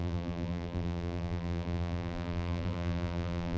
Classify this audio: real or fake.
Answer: fake